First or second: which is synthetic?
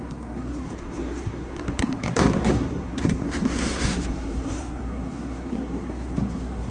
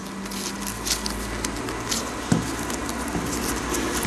first